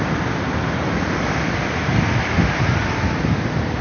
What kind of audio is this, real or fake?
real